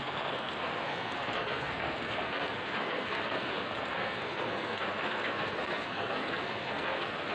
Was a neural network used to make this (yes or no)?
yes